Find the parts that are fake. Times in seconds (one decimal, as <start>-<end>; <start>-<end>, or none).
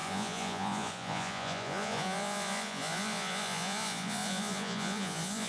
0.0-5.5